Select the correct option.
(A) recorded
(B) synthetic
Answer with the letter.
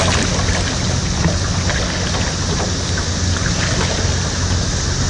A